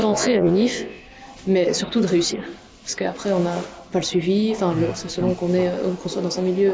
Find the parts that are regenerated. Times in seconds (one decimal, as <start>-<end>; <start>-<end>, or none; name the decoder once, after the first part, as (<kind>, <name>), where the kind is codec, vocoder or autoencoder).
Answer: 0.0-1.0 (vocoder, WaveNeXt)